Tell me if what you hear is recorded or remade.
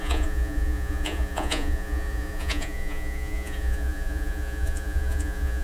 remade